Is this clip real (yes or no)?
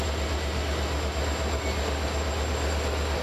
yes